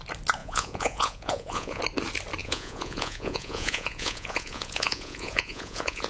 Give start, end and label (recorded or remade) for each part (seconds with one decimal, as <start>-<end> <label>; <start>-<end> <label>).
0.0-0.4 recorded; 0.4-1.8 remade; 1.8-2.4 recorded; 2.4-6.1 remade